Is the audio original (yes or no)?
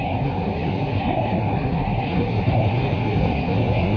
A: no